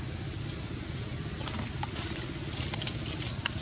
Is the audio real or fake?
real